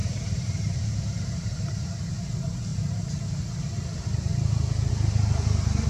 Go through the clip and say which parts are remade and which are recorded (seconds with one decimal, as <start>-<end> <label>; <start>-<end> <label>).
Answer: 0.0-2.3 remade; 2.3-2.7 recorded; 2.7-3.2 remade; 3.2-4.3 recorded; 4.3-4.9 remade; 4.9-5.9 recorded